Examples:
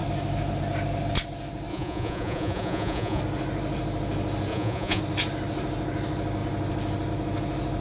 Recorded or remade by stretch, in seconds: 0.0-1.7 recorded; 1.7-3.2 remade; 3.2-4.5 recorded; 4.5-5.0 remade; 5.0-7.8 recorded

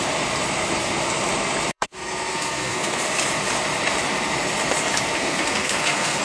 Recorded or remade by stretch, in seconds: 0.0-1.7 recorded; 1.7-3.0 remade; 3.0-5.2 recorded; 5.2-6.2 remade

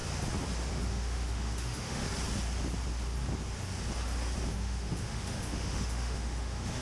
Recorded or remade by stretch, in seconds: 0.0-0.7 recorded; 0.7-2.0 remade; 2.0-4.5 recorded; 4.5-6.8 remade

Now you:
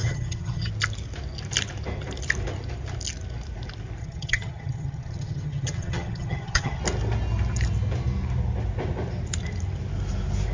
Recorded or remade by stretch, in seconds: 0.0-0.7 remade; 0.7-4.0 recorded; 4.0-6.8 remade; 6.8-10.5 recorded

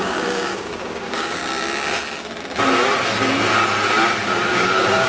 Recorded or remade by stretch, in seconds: 0.0-1.4 remade; 1.4-4.5 recorded; 4.5-5.1 remade

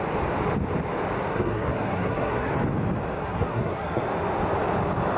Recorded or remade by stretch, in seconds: 0.0-1.3 recorded; 1.3-2.5 remade; 2.5-3.2 recorded; 3.2-4.0 remade; 4.0-5.2 recorded

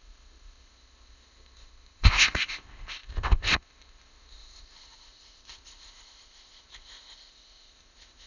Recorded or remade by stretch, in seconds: 0.0-8.3 remade